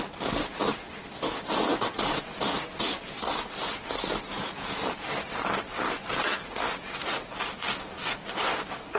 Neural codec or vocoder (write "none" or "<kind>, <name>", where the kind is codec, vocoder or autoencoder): none